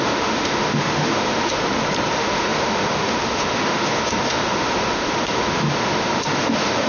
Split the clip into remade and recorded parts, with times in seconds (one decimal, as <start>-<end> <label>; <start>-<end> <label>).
0.0-1.6 remade; 1.6-2.1 recorded; 2.1-6.9 remade